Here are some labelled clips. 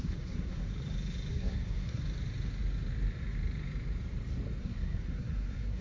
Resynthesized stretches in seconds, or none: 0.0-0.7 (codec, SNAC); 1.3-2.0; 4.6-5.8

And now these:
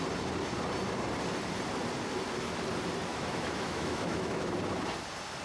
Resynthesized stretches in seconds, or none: 3.1-4.5 (autoencoder, DAC-VAE)

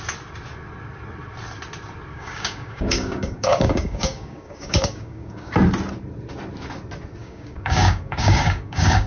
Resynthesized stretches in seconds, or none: 2.1-5.5 (codec, DAC); 7.2-9.1